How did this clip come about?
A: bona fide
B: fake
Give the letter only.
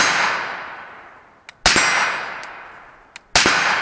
A